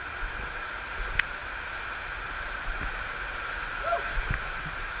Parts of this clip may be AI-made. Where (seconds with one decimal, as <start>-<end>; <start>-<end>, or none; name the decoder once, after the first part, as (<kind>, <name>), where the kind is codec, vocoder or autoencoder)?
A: none